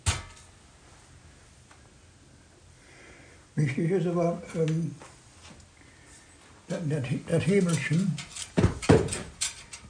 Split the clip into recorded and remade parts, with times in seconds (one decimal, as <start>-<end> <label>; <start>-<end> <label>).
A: 0.0-7.3 recorded; 7.3-9.9 remade